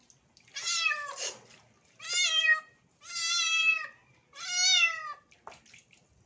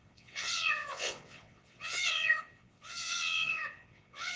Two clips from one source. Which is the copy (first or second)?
second